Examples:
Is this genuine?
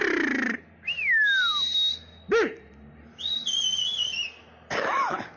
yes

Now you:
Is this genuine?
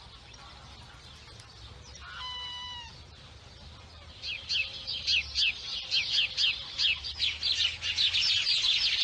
yes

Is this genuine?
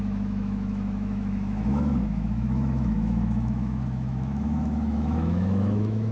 no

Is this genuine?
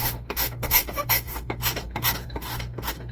no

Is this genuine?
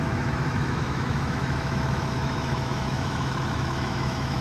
no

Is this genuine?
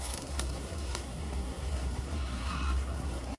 no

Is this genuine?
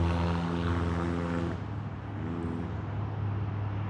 yes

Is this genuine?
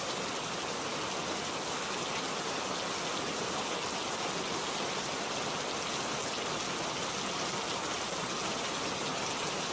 yes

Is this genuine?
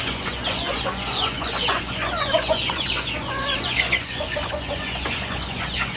no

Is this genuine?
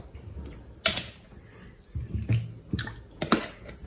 yes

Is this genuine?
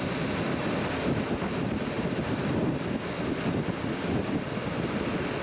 yes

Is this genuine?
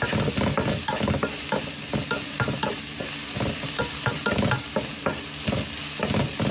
yes